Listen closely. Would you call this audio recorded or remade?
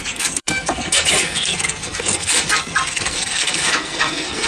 remade